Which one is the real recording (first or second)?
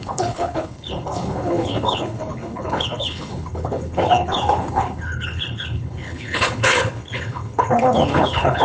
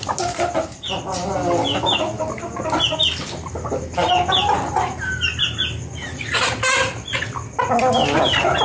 second